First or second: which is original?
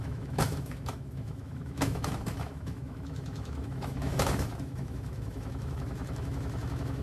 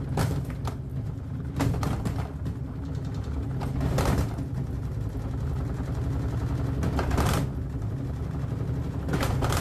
second